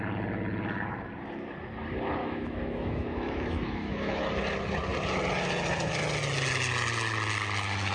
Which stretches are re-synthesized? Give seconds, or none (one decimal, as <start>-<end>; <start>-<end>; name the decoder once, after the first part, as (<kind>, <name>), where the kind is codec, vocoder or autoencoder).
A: 2.2-4.2 (autoencoder, DAC-VAE)